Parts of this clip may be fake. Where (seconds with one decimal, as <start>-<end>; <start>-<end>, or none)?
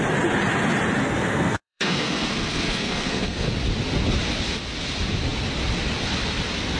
1.0-3.5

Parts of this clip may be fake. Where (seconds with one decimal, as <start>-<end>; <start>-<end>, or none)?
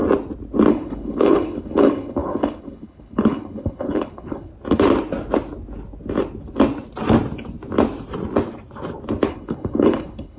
0.7-4.5; 9.3-10.4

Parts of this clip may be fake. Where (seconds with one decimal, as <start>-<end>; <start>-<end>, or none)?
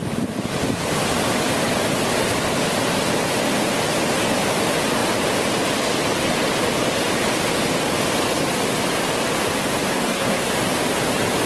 9.9-10.5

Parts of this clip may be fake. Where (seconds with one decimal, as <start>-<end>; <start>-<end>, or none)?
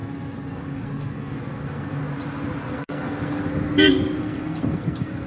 0.5-2.0; 2.7-3.4; 4.2-5.3